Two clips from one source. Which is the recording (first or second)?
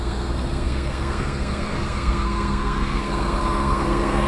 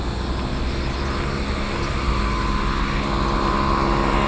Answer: second